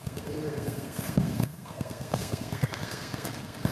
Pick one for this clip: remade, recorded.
remade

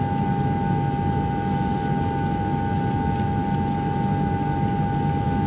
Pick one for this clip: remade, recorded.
recorded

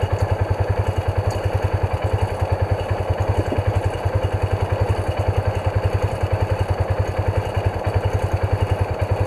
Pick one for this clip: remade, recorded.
recorded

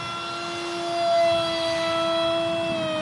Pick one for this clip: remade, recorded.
recorded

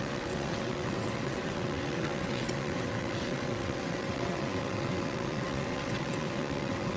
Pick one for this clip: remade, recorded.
remade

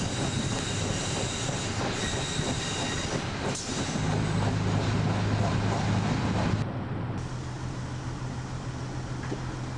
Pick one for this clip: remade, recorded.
recorded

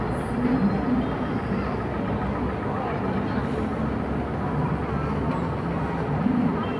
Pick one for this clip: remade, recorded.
recorded